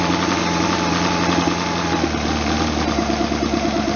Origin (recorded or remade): recorded